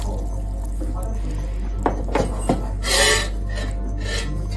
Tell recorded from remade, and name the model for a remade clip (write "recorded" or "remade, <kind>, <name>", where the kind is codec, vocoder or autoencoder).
recorded